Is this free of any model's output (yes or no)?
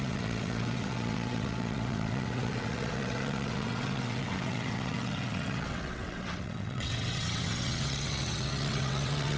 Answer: no